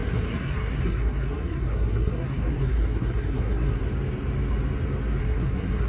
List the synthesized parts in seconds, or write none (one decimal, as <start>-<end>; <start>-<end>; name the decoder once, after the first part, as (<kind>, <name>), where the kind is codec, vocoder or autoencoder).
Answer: 0.0-3.8 (codec, SNAC); 5.2-5.9